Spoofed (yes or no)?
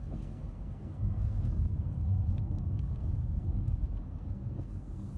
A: yes